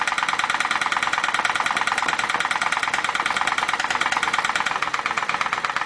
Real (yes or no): yes